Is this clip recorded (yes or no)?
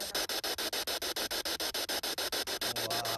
yes